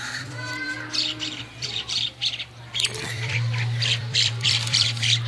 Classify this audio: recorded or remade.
remade